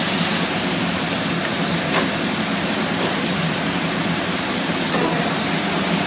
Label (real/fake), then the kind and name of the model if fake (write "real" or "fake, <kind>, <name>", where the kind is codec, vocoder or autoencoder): fake, vocoder, BigVGAN v2